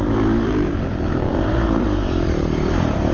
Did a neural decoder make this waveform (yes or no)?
yes